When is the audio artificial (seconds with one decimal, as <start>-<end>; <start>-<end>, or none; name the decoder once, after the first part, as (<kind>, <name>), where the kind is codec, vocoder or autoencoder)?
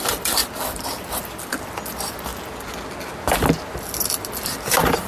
none